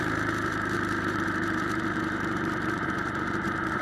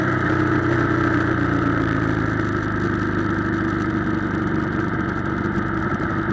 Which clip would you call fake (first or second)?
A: first